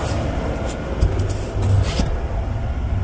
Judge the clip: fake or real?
real